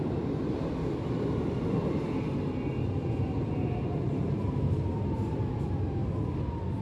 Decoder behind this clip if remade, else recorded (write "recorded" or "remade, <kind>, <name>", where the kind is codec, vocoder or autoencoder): recorded